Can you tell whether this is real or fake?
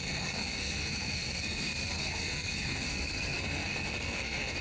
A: fake